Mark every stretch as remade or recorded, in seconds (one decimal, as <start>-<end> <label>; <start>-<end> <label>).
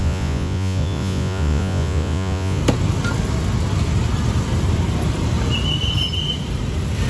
0.0-2.6 remade; 2.6-7.1 recorded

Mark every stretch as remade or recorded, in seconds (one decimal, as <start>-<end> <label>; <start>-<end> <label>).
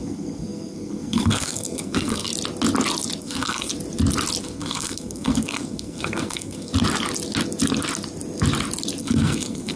0.0-2.3 remade; 2.3-3.2 recorded; 3.2-3.7 remade; 3.7-4.4 recorded; 4.4-6.7 remade; 6.7-9.0 recorded; 9.0-9.8 remade